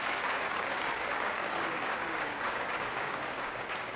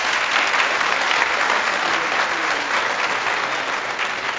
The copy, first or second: first